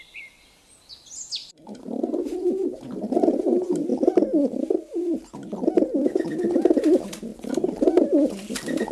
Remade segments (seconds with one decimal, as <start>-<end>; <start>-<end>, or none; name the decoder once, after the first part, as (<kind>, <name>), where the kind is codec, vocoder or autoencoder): none